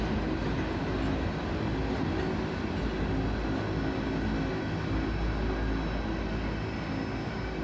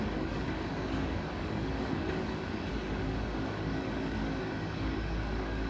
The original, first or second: first